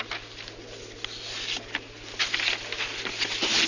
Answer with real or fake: real